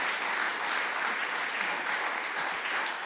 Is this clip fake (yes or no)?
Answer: no